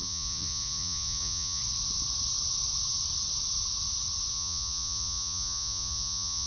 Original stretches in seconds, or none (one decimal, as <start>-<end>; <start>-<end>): 1.6-4.3